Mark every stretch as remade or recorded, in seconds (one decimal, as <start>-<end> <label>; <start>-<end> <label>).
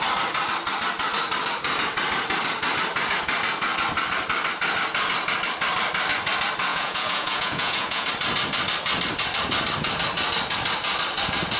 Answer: 0.0-6.7 recorded; 6.7-8.1 remade; 8.1-11.6 recorded